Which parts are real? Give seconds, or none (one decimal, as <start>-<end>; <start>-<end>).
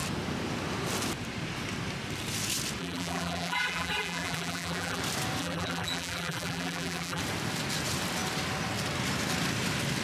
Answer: 0.0-2.8; 5.0-5.4; 7.2-10.0